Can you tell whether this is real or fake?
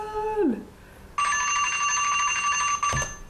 real